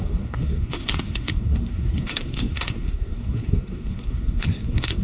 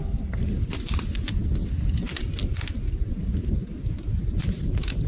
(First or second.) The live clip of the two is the second